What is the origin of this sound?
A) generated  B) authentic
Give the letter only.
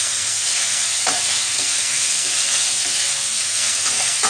A